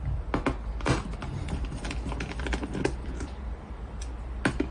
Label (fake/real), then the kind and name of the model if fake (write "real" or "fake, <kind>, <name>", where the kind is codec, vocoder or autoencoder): real